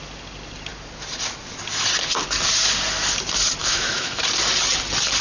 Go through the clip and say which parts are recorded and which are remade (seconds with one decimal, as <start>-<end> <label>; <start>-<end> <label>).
0.0-3.6 recorded; 3.6-4.2 remade; 4.2-5.2 recorded

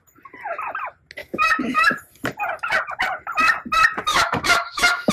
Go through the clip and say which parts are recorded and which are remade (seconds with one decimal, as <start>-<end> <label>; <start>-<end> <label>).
0.0-1.2 recorded; 1.2-2.0 remade; 2.0-4.1 recorded; 4.1-5.1 remade

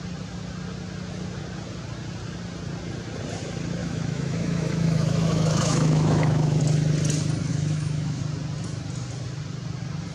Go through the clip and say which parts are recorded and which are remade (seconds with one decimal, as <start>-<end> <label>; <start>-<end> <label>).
0.0-3.8 recorded; 3.8-6.6 remade; 6.6-7.5 recorded; 7.5-8.2 remade; 8.2-10.1 recorded

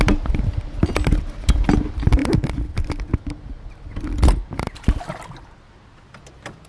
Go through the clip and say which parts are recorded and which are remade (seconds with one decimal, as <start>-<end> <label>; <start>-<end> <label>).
0.0-6.7 recorded

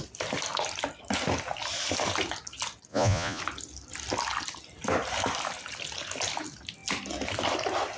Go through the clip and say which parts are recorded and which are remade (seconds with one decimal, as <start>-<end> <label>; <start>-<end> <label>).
0.0-2.9 recorded; 2.9-3.4 remade; 3.4-8.0 recorded